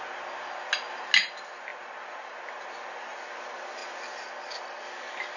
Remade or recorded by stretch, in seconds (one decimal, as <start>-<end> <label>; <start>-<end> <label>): 0.0-5.4 recorded